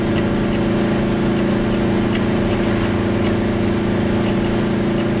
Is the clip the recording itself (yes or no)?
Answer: yes